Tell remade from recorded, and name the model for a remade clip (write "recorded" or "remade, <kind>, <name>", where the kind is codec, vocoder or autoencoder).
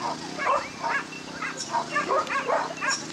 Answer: recorded